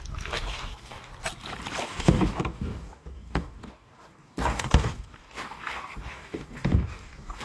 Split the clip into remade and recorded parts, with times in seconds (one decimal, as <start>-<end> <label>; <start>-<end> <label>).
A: 0.0-1.1 remade; 1.1-1.8 recorded; 1.8-7.4 remade